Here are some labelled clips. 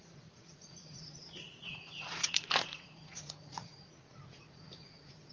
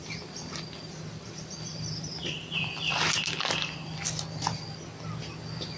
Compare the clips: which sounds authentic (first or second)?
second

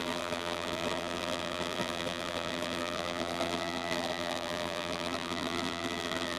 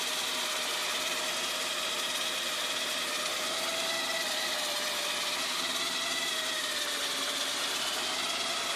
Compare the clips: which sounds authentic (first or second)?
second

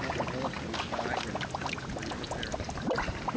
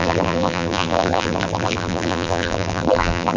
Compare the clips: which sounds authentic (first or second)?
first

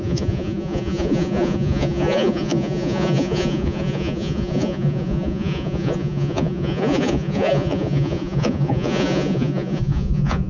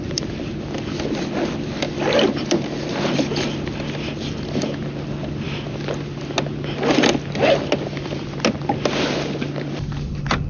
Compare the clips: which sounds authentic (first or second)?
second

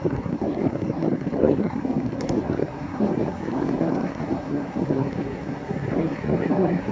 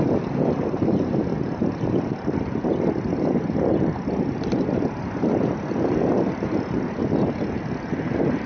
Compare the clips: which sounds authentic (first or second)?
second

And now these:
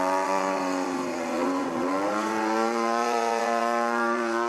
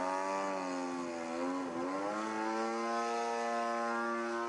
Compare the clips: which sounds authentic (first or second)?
second